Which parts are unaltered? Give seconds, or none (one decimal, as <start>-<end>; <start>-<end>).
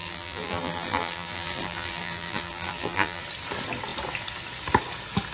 3.2-5.3